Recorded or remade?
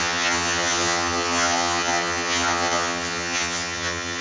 remade